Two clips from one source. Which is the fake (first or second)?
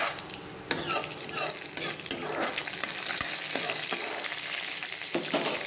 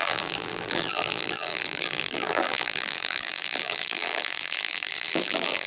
second